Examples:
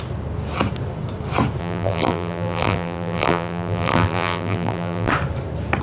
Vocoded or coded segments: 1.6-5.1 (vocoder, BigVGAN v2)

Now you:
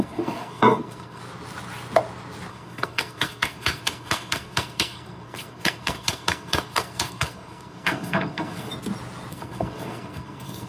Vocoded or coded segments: 0.0-1.2 (codec, SNAC); 2.5-8.7; 9.3-10.7

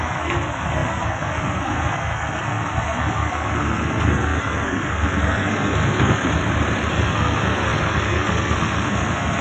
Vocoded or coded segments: 0.0-6.4 (codec, SNAC); 6.9-9.4